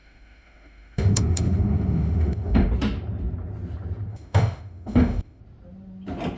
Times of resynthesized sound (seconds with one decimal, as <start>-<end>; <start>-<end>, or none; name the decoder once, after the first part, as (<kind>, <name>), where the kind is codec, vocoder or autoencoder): 0.0-2.7 (autoencoder, DAC-VAE); 4.1-5.4

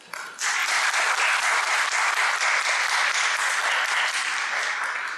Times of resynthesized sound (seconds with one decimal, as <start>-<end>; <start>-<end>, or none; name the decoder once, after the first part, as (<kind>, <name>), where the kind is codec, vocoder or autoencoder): none

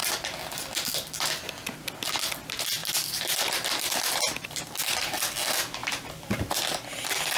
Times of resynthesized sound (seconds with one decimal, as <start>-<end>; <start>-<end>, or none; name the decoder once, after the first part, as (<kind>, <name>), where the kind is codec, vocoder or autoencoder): 0.0-0.6 (vocoder, BigVGAN v2); 2.8-4.6; 5.8-6.5